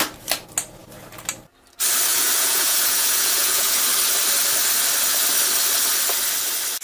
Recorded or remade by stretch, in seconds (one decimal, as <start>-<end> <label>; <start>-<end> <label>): 0.0-2.1 recorded; 2.1-3.8 remade; 3.8-6.8 recorded